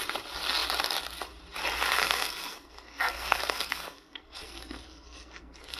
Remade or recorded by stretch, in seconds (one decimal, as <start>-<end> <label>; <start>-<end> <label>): 0.0-2.0 recorded; 2.0-5.8 remade